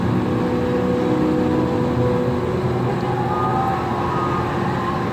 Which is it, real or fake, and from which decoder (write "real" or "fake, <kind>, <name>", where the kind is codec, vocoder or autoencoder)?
real